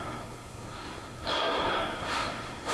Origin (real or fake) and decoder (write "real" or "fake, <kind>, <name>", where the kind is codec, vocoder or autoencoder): fake, codec, SNAC